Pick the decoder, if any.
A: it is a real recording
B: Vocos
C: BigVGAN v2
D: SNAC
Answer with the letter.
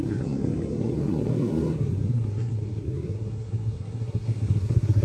D